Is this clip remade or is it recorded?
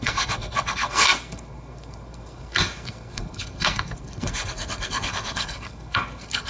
remade